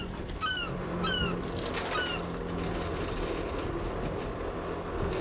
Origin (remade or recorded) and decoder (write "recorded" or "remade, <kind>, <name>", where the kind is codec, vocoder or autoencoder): recorded